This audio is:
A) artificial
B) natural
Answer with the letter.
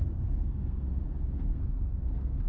A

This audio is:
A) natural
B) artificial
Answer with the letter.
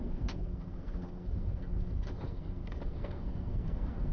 B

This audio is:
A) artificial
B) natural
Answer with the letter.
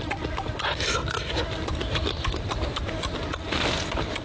B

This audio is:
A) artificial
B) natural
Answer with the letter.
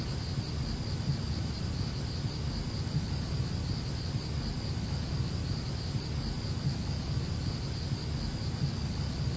B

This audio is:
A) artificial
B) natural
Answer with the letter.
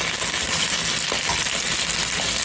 B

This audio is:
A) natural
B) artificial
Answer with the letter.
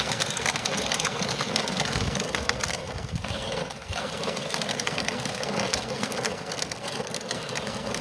B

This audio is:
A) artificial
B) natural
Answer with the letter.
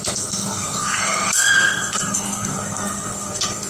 A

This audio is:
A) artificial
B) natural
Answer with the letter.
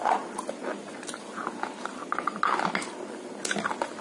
B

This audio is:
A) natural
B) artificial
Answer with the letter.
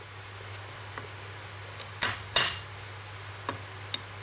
A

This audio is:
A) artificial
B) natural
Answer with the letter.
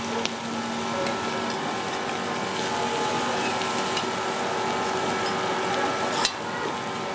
B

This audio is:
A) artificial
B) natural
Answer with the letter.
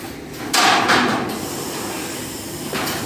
B